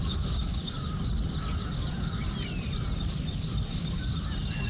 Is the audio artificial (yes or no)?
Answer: no